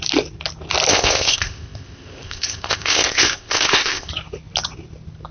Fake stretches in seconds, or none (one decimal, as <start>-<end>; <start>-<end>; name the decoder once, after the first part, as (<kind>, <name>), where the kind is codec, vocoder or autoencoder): 0.9-4.1 (codec, ZipCodec)